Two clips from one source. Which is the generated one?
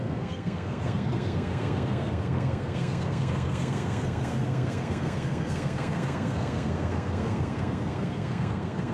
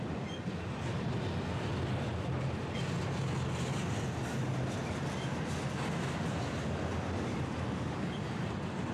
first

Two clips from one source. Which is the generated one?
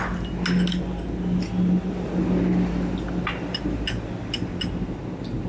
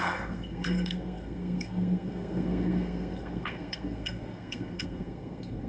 second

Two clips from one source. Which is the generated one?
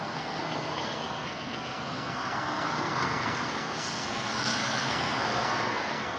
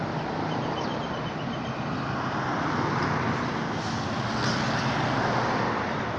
first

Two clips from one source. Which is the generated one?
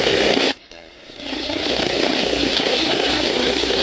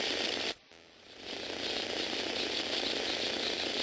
first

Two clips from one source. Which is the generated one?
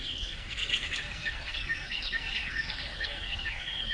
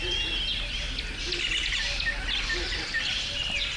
first